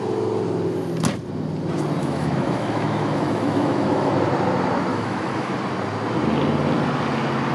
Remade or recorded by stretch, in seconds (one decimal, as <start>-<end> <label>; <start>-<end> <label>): 0.0-2.0 recorded; 2.0-4.1 remade; 4.1-4.9 recorded; 4.9-5.5 remade; 5.5-7.5 recorded